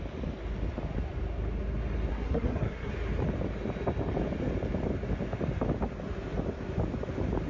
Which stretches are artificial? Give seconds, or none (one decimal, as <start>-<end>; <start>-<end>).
2.1-2.9